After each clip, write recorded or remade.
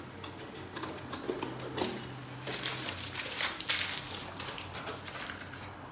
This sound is recorded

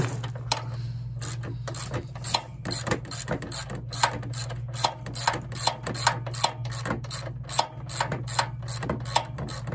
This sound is recorded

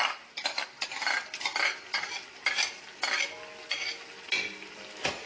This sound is recorded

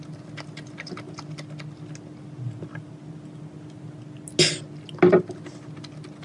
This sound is recorded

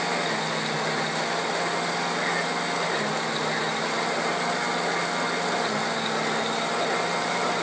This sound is recorded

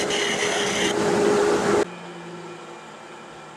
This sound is recorded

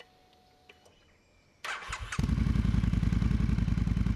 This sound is recorded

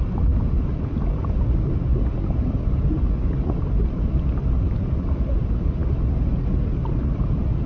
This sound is recorded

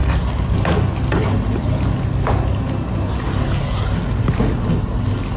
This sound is recorded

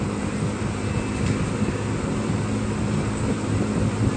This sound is recorded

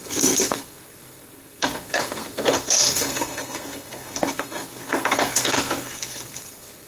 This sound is remade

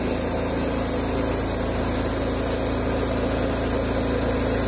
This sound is recorded